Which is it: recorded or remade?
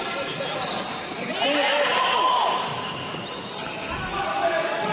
recorded